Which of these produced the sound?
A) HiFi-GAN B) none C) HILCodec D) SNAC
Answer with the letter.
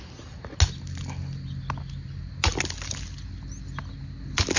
B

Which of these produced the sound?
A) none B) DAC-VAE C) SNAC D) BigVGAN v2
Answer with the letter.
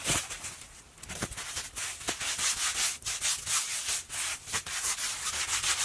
A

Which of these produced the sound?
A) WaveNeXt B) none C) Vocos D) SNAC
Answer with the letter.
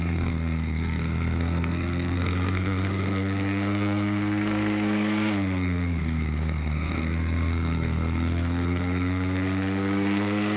D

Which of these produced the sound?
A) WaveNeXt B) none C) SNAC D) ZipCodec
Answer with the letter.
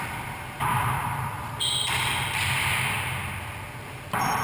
B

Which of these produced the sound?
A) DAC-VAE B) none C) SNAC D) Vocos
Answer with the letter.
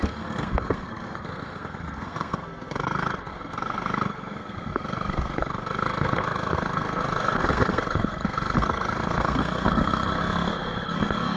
C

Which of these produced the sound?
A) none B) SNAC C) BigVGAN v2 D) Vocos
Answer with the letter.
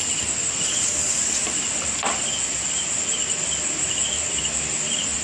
A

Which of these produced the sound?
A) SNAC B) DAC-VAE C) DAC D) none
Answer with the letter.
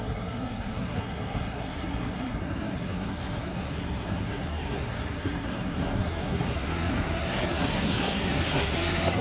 A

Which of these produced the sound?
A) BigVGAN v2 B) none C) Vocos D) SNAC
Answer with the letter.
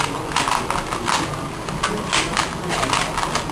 B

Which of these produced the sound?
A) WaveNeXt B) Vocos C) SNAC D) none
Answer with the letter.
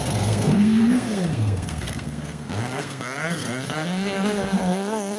C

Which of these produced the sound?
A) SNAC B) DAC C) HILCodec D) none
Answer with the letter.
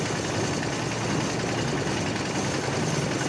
D